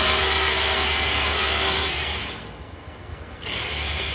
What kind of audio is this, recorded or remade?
remade